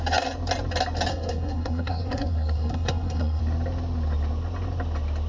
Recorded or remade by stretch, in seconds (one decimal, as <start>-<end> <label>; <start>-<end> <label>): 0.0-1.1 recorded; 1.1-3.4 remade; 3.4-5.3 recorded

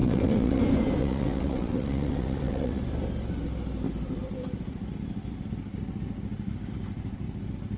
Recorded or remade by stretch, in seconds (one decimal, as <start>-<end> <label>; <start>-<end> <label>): 0.0-0.6 remade; 0.6-1.0 recorded; 1.0-2.8 remade; 2.8-7.8 recorded

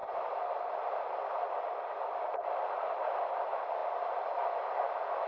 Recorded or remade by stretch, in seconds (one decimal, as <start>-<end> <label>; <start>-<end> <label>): 0.0-5.3 recorded

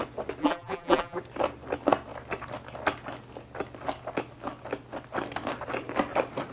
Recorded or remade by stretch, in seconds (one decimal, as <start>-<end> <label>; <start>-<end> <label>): 0.0-0.4 recorded; 0.4-1.2 remade; 1.2-6.5 recorded